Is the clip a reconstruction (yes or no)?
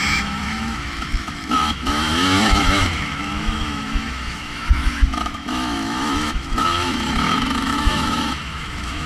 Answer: yes